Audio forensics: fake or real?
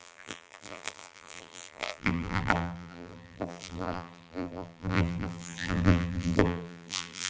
fake